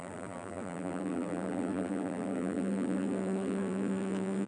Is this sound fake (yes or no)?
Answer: yes